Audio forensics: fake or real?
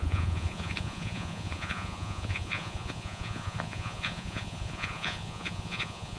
fake